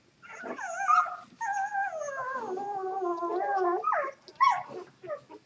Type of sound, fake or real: real